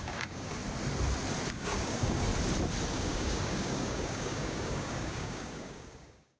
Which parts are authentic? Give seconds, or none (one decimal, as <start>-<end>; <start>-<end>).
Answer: 0.6-1.5; 2.3-2.9